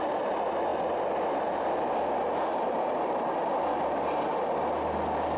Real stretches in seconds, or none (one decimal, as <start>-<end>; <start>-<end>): 0.0-5.4